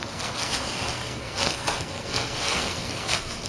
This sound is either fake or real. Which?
fake